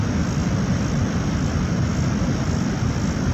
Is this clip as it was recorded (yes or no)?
yes